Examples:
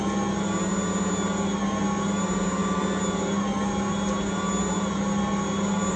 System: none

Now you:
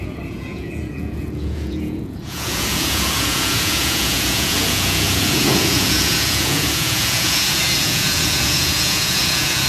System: vocoder, Vocos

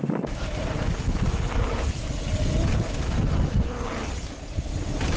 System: none